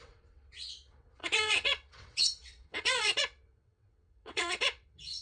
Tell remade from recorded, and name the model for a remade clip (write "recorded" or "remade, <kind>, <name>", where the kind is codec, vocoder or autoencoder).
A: remade, vocoder, WaveNeXt